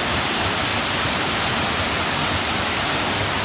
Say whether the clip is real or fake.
real